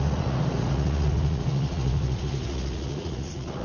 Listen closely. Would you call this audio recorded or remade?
remade